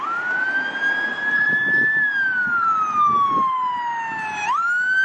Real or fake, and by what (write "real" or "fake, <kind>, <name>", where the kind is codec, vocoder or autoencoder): real